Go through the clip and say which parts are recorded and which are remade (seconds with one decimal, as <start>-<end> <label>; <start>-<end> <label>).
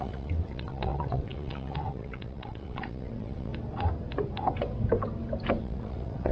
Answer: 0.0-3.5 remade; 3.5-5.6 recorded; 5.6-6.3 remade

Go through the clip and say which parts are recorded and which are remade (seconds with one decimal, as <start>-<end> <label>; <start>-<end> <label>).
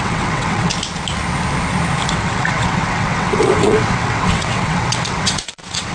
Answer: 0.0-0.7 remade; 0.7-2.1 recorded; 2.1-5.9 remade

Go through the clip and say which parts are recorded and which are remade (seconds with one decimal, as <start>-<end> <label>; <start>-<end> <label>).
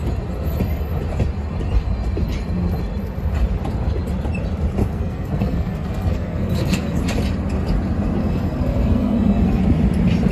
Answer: 0.0-4.8 recorded; 4.8-7.0 remade; 7.0-8.2 recorded; 8.2-9.6 remade; 9.6-10.3 recorded